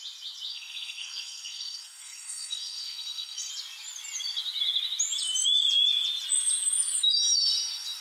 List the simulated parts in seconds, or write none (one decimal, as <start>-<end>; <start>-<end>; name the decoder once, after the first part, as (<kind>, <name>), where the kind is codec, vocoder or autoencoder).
0.5-3.5 (codec, SNAC)